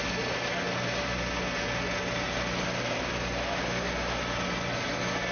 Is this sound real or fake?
real